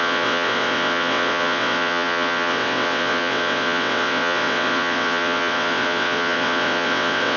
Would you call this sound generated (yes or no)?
yes